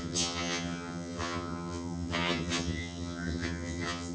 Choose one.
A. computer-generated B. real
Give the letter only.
A